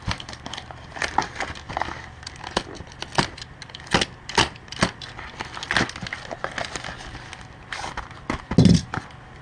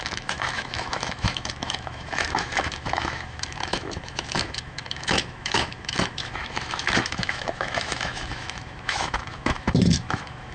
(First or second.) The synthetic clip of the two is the second